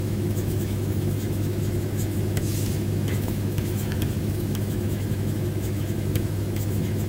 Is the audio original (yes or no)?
no